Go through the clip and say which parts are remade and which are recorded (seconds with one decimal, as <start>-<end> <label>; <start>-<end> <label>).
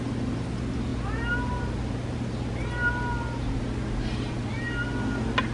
0.0-5.5 recorded